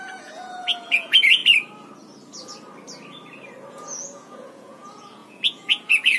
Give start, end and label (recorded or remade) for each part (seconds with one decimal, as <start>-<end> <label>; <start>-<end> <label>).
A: 0.0-1.4 remade; 1.4-3.7 recorded; 3.7-6.2 remade